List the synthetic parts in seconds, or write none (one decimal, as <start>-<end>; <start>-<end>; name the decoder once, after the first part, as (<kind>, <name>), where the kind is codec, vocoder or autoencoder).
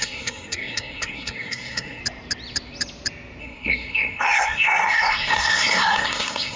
0.0-2.0 (codec, SNAC); 3.4-6.6